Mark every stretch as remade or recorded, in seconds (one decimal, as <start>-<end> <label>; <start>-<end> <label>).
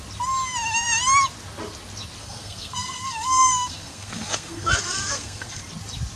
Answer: 0.0-2.2 recorded; 2.2-5.6 remade; 5.6-6.2 recorded